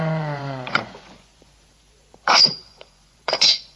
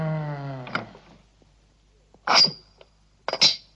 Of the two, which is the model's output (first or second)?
first